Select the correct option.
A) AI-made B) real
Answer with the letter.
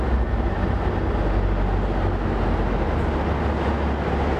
B